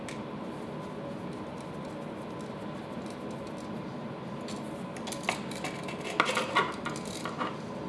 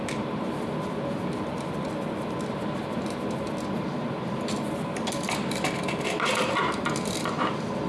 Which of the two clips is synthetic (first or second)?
second